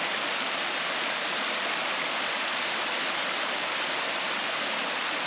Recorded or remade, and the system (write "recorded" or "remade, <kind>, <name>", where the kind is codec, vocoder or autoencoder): recorded